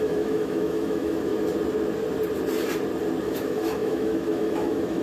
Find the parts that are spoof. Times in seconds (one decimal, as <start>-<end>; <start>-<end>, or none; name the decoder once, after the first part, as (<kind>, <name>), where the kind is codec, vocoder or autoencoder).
0.0-1.3 (autoencoder, DAC-VAE); 3.2-5.0